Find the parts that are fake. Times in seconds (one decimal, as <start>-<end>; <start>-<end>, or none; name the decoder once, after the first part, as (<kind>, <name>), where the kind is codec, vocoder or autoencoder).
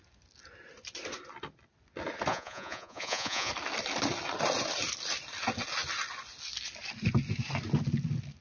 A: 2.3-3.5 (vocoder, Vocos)